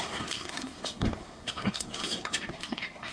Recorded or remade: remade